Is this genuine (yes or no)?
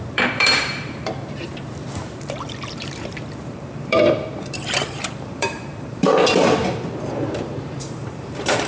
no